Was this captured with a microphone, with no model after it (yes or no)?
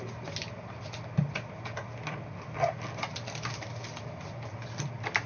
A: yes